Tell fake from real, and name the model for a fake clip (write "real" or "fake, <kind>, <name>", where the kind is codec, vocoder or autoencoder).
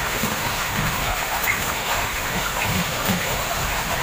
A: fake, autoencoder, DAC-VAE